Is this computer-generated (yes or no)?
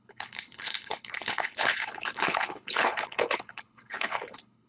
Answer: yes